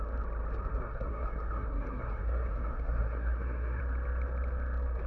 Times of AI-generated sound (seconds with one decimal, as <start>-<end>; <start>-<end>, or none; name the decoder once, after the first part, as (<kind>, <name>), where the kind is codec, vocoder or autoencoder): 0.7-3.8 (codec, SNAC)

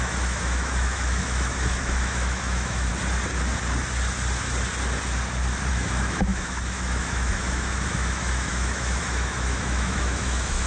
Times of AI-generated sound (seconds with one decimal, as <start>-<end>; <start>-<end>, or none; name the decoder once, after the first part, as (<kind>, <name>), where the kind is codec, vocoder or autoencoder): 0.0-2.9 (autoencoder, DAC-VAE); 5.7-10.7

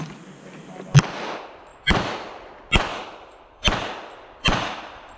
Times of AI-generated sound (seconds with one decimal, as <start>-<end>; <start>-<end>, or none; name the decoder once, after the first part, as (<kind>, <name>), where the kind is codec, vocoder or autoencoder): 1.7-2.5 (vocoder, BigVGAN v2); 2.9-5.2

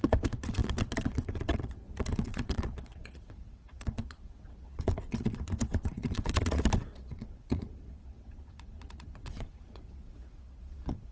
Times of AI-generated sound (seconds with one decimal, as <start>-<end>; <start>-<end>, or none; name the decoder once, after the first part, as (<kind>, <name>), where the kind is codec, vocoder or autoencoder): 0.0-11.1 (vocoder, WaveNeXt)